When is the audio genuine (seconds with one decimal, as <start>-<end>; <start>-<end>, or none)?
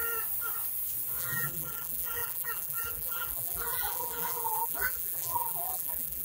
0.0-1.2